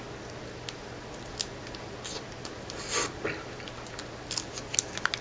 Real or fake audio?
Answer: real